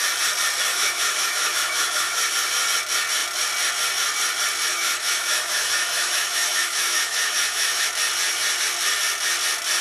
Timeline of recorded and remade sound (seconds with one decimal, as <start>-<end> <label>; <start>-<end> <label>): 0.0-0.7 recorded; 0.7-2.2 remade; 2.2-4.7 recorded; 4.7-7.9 remade; 7.9-9.8 recorded